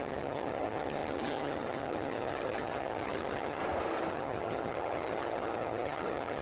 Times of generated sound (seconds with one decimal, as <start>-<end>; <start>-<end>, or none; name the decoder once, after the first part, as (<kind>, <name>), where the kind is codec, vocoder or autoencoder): 0.0-3.6 (vocoder, HiFi-GAN); 4.1-6.4